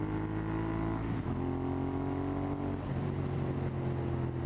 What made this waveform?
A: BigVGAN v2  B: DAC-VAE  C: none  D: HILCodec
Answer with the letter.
C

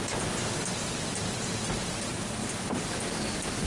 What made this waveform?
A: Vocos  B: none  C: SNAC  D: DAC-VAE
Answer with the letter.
B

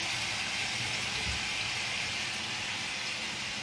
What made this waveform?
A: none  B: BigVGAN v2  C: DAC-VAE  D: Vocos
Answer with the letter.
A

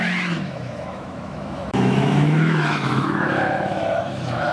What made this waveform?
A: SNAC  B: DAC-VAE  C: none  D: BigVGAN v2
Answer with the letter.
B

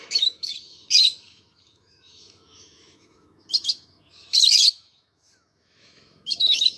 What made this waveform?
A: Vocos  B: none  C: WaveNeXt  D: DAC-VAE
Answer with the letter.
D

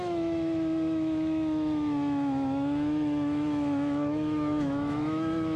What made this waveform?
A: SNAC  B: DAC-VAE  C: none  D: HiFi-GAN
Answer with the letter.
B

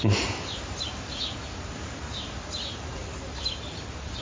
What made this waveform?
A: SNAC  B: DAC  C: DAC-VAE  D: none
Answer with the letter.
D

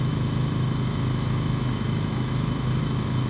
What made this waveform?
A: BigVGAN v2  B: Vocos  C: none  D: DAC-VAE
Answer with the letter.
D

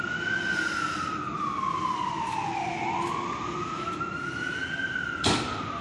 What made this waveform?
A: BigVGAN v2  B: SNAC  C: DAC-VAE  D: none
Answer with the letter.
D